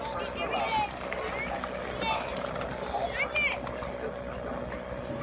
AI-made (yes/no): no